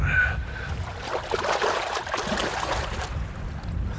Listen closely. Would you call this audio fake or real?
real